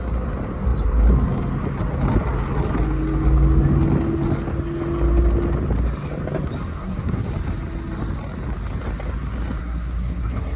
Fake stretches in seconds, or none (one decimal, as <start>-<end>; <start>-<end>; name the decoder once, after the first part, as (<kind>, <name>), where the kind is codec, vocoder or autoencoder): 6.7-7.3 (codec, SNAC); 9.6-10.6